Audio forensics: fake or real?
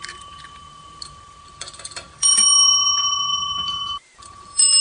fake